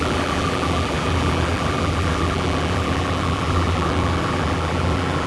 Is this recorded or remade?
remade